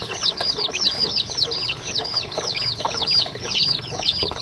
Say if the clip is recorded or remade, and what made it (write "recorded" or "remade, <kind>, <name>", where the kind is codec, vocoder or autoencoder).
remade, codec, HILCodec